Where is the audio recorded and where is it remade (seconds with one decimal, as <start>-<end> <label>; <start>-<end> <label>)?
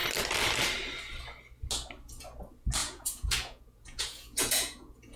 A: 0.0-2.8 recorded; 2.8-5.2 remade